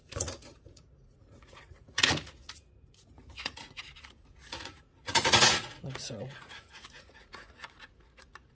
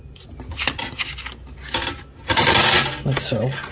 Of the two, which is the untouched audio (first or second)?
second